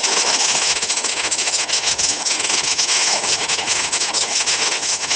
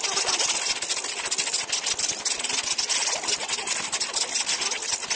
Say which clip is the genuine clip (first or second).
second